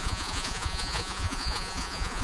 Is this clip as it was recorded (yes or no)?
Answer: no